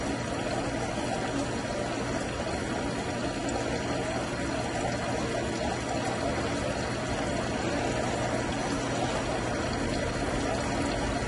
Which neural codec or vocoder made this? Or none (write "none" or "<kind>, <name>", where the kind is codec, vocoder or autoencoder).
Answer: none